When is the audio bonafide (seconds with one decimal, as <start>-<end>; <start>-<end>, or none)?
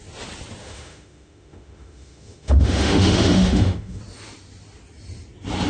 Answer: 0.0-0.6; 4.0-5.7